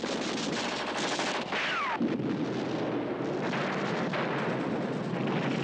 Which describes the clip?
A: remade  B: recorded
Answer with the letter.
B